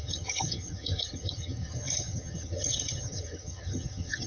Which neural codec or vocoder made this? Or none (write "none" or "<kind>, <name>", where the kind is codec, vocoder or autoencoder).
vocoder, HiFi-GAN